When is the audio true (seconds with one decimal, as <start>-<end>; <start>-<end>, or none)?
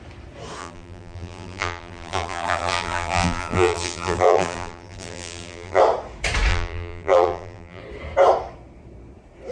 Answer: 0.0-0.6; 5.8-6.5; 7.8-9.5